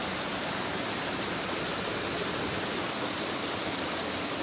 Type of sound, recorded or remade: remade